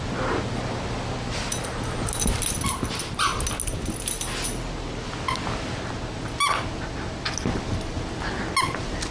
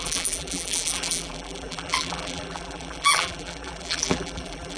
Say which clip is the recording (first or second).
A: first